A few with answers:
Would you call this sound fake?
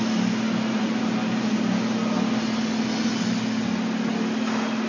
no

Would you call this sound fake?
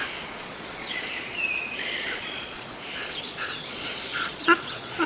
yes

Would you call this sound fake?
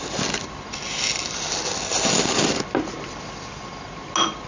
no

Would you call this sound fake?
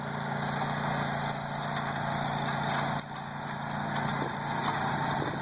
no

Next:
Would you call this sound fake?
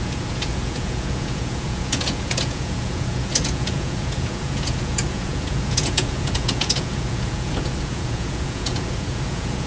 yes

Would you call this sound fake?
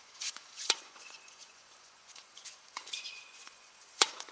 yes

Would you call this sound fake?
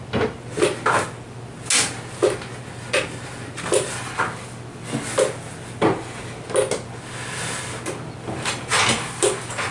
no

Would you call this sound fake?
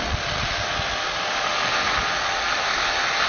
no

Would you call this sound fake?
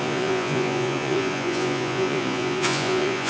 yes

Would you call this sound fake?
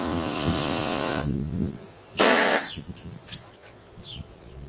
yes